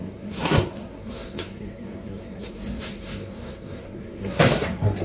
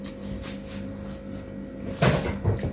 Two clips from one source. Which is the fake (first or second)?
first